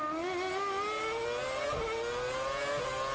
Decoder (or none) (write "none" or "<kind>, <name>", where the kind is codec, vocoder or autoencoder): none